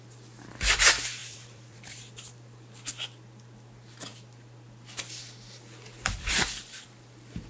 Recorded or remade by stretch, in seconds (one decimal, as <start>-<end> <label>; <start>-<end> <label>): 0.0-1.2 recorded; 1.2-2.0 remade; 2.0-7.5 recorded